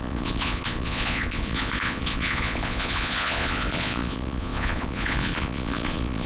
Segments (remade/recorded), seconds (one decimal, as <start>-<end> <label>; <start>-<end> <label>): 0.0-6.3 remade